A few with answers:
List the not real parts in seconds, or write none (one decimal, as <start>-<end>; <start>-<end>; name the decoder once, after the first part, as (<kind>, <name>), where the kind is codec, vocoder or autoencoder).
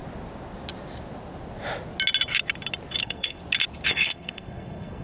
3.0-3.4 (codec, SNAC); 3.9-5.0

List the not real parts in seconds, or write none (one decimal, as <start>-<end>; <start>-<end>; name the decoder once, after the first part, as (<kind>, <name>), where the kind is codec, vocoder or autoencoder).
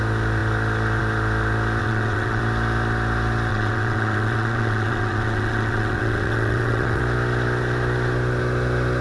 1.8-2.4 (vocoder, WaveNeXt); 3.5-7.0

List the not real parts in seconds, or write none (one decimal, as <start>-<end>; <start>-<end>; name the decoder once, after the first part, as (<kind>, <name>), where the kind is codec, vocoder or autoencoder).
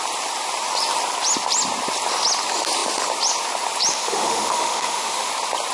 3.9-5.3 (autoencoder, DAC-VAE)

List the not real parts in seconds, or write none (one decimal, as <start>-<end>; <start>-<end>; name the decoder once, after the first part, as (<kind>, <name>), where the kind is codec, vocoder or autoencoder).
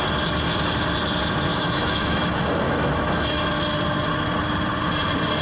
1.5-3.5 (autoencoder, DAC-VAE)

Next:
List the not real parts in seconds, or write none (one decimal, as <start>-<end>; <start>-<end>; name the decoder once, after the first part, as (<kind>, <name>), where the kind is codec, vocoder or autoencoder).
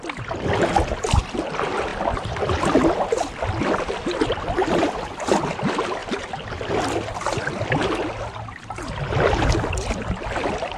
6.0-6.7 (vocoder, BigVGAN v2)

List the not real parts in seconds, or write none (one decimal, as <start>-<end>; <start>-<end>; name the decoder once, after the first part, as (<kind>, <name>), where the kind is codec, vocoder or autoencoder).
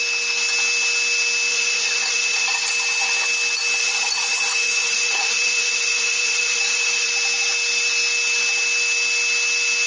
1.5-2.7 (vocoder, Vocos); 3.8-7.1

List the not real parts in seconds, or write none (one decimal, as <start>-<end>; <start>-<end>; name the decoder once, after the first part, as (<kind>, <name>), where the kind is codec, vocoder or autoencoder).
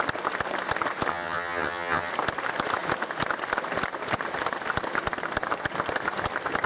1.1-2.1 (vocoder, HiFi-GAN)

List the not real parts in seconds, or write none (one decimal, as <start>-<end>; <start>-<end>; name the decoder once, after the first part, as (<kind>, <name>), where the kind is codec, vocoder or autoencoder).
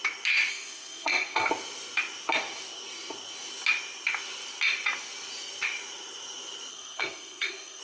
0.5-1.5 (codec, SNAC); 6.7-7.8